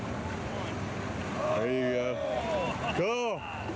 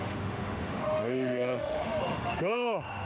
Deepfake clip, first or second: second